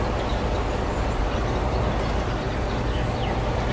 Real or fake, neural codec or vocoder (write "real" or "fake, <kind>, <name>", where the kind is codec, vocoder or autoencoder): real